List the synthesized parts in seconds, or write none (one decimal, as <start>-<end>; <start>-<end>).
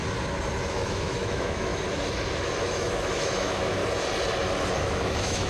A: 0.7-1.7; 2.6-3.8; 4.8-5.5